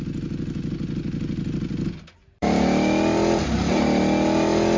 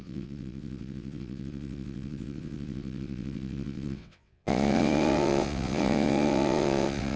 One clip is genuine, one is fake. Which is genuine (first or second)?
first